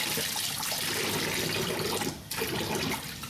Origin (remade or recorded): recorded